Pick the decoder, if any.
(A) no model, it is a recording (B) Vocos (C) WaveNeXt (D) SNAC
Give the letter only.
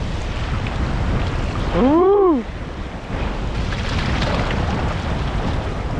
A